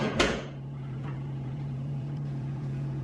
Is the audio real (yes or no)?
no